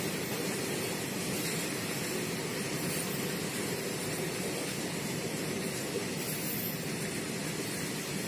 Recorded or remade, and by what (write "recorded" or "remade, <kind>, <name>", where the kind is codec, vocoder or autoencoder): recorded